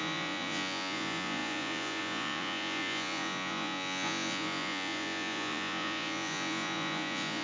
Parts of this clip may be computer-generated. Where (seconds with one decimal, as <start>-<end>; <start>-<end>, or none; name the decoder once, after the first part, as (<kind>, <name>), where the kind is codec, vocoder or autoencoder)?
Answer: 0.0-7.4 (vocoder, Vocos)